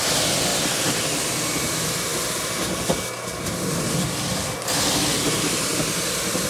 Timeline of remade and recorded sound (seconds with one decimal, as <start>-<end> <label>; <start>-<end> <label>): 0.0-6.5 recorded